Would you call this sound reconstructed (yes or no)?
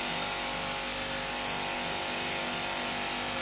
no